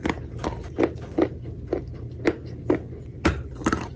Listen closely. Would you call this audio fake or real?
real